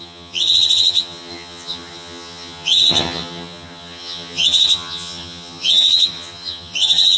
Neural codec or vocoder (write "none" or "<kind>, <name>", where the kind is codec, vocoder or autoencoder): vocoder, HiFi-GAN